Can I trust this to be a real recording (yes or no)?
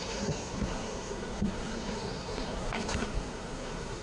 no